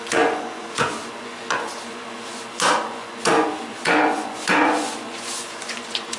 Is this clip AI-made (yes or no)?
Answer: yes